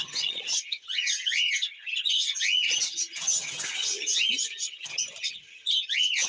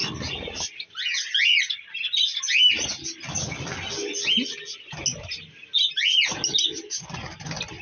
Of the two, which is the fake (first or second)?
first